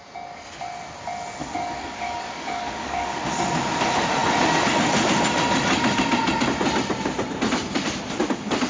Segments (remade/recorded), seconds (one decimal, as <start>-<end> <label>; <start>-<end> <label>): 0.0-1.4 recorded; 1.4-3.2 remade; 3.2-8.7 recorded